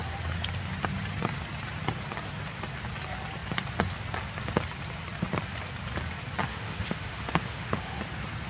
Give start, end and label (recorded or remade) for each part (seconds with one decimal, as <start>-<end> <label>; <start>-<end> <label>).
0.0-6.5 recorded; 6.5-8.0 remade; 8.0-8.5 recorded